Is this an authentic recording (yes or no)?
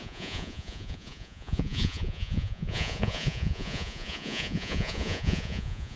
no